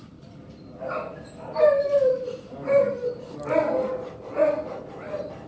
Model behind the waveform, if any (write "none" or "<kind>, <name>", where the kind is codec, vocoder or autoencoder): vocoder, BigVGAN v2